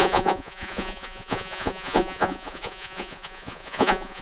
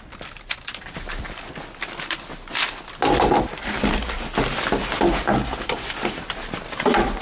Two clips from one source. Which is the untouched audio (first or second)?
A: second